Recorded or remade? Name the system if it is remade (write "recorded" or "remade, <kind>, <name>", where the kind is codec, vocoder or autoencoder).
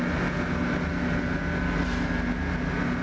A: recorded